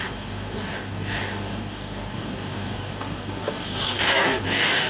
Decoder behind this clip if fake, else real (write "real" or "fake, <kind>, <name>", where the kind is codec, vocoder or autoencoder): fake, codec, DAC